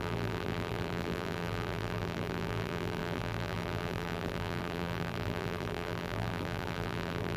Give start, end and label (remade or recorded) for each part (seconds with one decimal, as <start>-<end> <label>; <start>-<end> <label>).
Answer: 0.0-7.4 remade